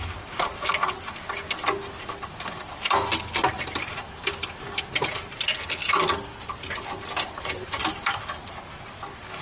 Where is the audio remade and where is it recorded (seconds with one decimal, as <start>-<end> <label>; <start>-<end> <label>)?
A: 0.0-0.7 remade; 0.7-7.8 recorded; 7.8-8.6 remade; 8.6-9.4 recorded